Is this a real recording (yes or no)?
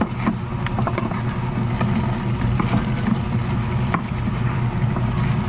yes